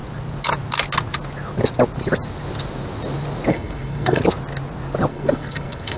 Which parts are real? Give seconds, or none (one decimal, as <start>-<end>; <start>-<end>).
0.0-3.5; 4.2-5.1